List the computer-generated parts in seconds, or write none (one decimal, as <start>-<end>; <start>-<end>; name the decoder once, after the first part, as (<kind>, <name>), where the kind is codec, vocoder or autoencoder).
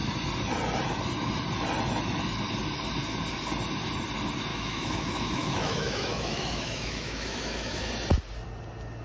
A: 4.5-7.9 (autoencoder, DAC-VAE)